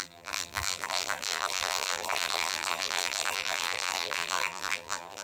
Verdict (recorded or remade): remade